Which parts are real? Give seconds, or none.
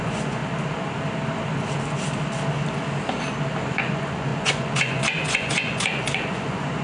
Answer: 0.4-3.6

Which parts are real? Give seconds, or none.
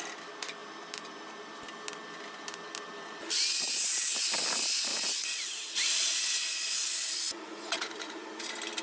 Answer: 0.0-4.9; 8.4-8.8